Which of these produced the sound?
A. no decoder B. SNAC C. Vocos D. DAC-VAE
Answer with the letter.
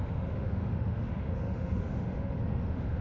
D